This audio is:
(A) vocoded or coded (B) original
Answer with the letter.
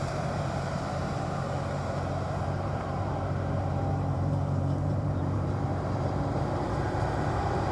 A